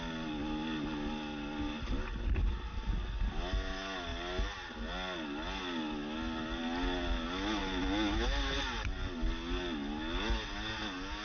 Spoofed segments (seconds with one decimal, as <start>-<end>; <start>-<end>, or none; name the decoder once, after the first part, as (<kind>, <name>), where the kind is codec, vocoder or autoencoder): none